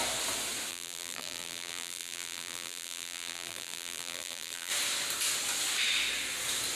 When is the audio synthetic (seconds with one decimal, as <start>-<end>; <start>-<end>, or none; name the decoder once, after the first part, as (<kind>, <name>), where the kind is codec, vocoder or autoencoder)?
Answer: 0.7-4.7 (vocoder, BigVGAN v2)